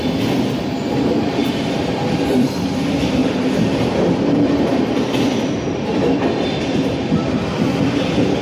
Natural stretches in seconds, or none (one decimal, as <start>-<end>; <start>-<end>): 3.2-4.1